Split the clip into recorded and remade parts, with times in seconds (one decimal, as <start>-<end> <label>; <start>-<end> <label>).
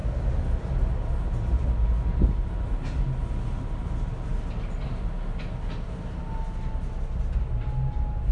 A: 0.0-8.3 recorded